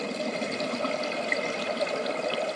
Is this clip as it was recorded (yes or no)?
yes